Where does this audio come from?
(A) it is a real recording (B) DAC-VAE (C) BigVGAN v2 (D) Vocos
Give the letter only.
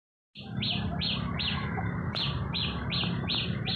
A